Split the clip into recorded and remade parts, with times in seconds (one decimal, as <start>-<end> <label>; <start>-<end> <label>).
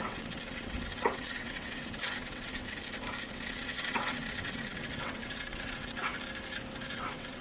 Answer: 0.0-2.6 remade; 2.6-3.3 recorded; 3.3-6.1 remade; 6.1-6.9 recorded; 6.9-7.4 remade